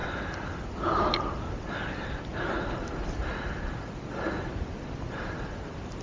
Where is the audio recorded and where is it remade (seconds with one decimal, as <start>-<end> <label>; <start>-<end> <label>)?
0.0-6.0 recorded

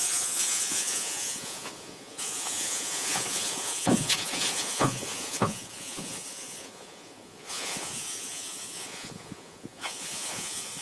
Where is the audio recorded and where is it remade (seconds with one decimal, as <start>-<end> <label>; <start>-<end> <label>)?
0.0-10.8 remade

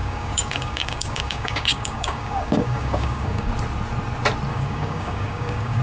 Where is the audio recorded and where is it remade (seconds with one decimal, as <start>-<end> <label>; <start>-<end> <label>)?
0.0-3.5 remade; 3.5-4.5 recorded; 4.5-5.8 remade

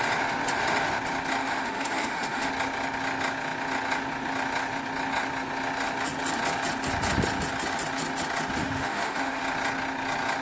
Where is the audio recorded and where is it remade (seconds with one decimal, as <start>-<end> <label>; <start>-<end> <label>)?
0.0-1.4 recorded; 1.4-2.5 remade; 2.5-8.6 recorded; 8.6-9.4 remade; 9.4-10.4 recorded

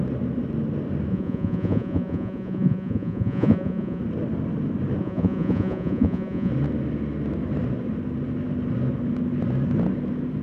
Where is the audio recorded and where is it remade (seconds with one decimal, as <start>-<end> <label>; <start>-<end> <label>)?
0.0-1.1 recorded; 1.1-4.0 remade; 4.0-5.0 recorded; 5.0-6.5 remade; 6.5-10.4 recorded

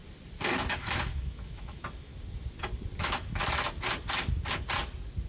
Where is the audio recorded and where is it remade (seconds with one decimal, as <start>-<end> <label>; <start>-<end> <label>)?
0.0-0.7 recorded; 0.7-2.1 remade; 2.1-3.0 recorded; 3.0-3.4 remade; 3.4-5.3 recorded

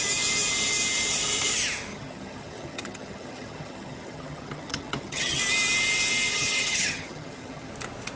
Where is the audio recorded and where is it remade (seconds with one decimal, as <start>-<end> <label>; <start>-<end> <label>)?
0.0-1.9 recorded; 1.9-5.4 remade; 5.4-6.3 recorded; 6.3-7.7 remade; 7.7-8.2 recorded

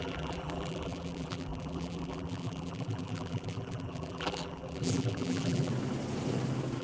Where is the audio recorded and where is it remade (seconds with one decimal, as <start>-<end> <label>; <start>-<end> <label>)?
0.0-5.7 remade; 5.7-6.8 recorded